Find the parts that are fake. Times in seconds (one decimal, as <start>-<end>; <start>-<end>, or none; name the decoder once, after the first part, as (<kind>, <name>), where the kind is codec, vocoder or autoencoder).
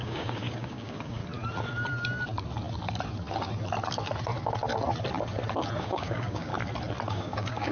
0.0-1.2 (codec, DAC); 5.8-6.5; 7.1-7.7